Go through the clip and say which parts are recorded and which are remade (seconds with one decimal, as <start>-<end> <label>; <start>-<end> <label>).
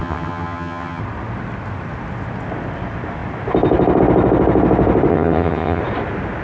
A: 0.0-1.0 remade; 1.0-5.1 recorded; 5.1-5.8 remade; 5.8-6.4 recorded